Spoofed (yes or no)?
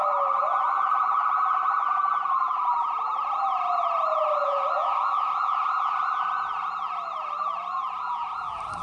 no